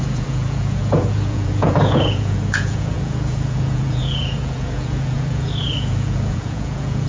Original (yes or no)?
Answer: no